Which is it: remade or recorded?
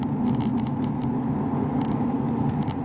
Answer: recorded